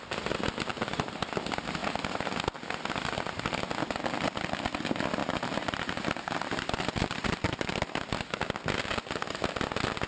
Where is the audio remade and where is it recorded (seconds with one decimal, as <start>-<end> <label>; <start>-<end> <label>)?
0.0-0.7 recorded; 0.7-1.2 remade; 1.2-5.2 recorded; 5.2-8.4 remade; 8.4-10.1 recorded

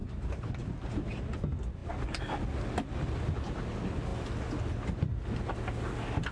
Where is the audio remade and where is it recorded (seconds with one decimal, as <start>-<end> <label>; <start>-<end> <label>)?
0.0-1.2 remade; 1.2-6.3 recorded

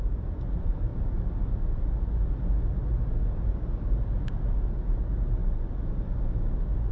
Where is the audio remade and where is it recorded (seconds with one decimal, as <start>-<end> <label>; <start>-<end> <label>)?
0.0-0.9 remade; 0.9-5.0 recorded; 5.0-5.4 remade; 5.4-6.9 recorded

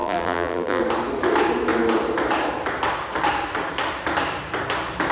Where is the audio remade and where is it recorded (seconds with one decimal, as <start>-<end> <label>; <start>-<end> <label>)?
0.0-0.8 remade; 0.8-5.1 recorded

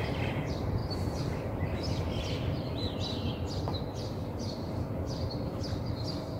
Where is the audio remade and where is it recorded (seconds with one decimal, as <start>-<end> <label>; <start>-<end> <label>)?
0.0-0.8 recorded; 0.8-3.8 remade; 3.8-6.4 recorded